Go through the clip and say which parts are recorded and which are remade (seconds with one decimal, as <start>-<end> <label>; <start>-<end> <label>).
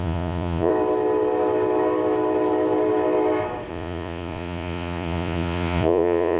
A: 0.0-0.7 remade; 0.7-3.7 recorded; 3.7-6.4 remade